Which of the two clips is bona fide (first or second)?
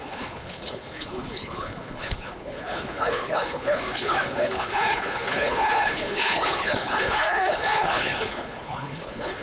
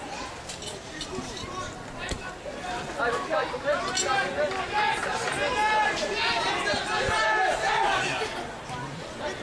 second